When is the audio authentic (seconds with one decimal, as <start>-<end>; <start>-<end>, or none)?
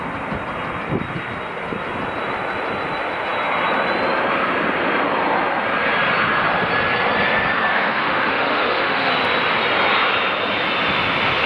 0.0-7.7; 9.1-11.5